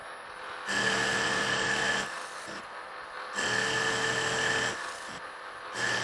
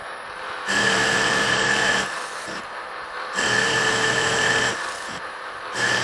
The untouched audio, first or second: first